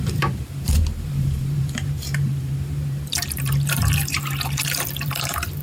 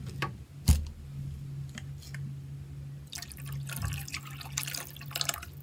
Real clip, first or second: second